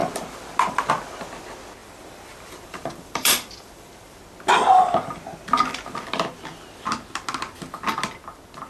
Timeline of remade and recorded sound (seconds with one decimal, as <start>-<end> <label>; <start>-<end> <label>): 0.0-1.8 recorded; 1.8-4.2 remade; 4.2-8.7 recorded